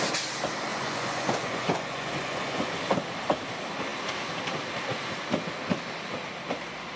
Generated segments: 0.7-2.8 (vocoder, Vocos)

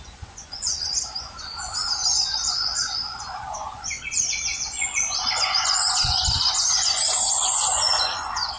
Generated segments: 0.0-8.6 (vocoder, Vocos)